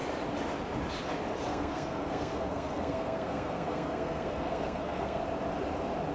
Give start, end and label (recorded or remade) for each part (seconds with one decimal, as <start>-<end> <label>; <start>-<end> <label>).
0.0-1.5 recorded; 1.5-5.2 remade; 5.2-6.1 recorded